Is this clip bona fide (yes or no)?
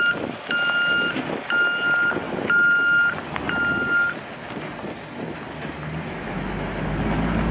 yes